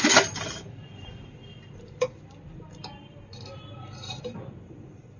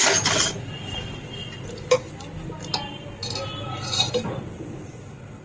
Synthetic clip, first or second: first